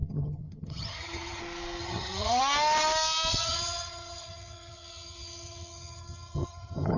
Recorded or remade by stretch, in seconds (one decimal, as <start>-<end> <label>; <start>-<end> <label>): 0.0-1.4 remade; 1.4-1.8 recorded; 1.8-2.4 remade; 2.4-3.3 recorded; 3.3-7.0 remade